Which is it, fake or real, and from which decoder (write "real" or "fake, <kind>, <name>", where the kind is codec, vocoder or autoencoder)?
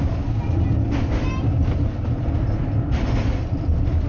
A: real